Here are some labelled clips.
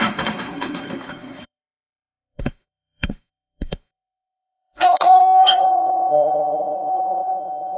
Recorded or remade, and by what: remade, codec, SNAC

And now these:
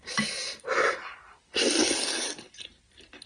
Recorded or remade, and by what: recorded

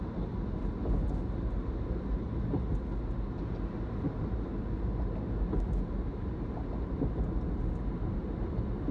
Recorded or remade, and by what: recorded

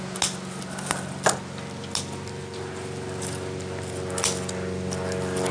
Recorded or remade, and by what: recorded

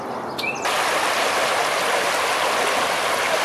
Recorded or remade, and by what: recorded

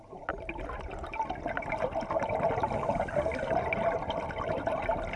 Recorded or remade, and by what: recorded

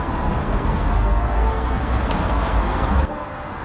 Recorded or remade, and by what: remade, codec, SNAC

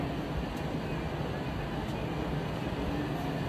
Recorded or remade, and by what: recorded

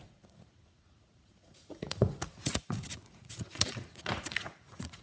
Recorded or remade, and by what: remade, vocoder, Vocos